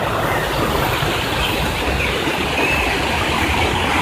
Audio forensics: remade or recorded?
recorded